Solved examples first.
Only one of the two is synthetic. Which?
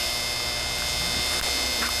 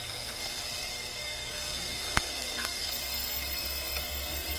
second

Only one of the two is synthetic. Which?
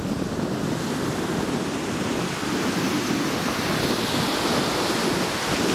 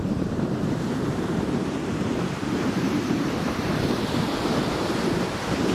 second